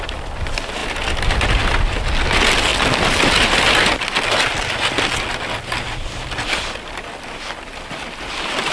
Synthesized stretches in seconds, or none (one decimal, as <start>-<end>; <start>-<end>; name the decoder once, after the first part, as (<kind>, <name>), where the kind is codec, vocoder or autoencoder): none